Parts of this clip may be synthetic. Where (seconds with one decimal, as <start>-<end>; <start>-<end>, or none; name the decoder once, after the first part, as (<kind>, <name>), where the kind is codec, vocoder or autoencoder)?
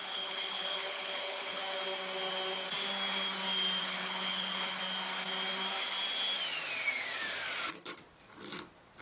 0.0-1.6 (codec, HILCodec); 3.8-4.8